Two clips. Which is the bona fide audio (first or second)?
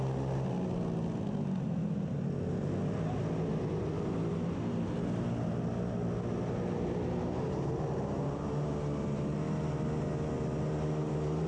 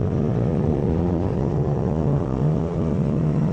first